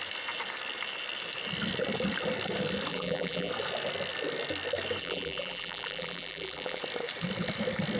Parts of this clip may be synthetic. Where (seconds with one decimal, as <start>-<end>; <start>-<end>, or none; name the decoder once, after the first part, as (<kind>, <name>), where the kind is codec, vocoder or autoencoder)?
2.9-3.5 (vocoder, BigVGAN v2); 5.0-6.8